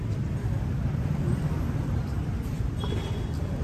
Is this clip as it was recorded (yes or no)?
no